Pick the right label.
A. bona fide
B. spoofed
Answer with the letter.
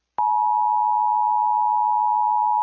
A